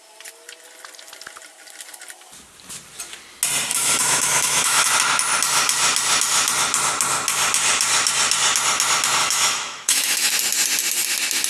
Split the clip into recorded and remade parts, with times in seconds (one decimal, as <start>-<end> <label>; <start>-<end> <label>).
0.0-3.7 recorded; 3.7-4.9 remade; 4.9-9.2 recorded; 9.2-10.3 remade; 10.3-11.5 recorded